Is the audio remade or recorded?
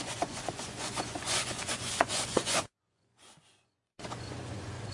remade